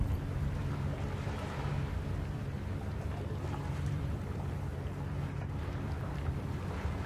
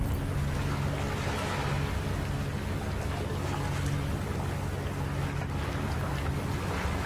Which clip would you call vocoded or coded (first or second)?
first